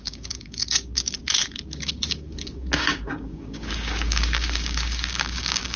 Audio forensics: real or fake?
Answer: fake